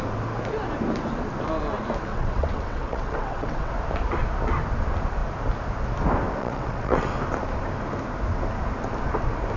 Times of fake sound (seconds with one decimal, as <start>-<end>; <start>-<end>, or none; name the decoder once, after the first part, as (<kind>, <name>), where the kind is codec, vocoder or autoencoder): 2.1-3.7 (vocoder, WaveNeXt); 6.4-7.1